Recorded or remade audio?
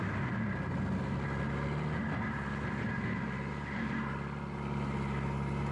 recorded